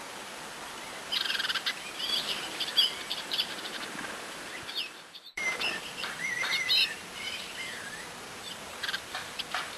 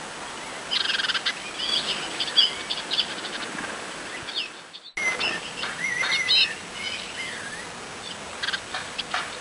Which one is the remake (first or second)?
first